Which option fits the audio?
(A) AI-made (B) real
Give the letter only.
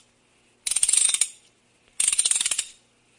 B